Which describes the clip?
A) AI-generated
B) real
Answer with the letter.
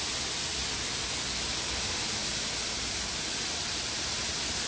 B